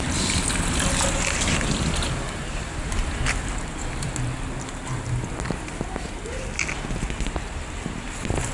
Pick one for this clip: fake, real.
real